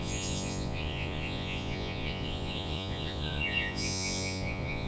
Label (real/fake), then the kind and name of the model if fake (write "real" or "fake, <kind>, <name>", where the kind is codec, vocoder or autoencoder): fake, vocoder, Vocos